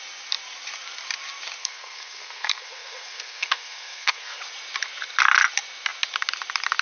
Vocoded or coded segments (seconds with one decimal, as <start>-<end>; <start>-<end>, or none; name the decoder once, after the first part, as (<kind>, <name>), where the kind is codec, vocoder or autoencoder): 1.6-4.4 (codec, SNAC)